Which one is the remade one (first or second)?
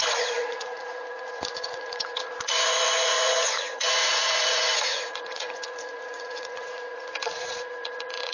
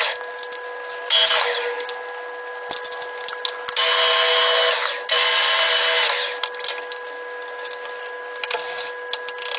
first